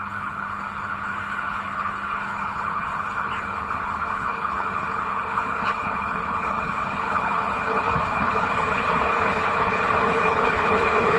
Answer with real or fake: fake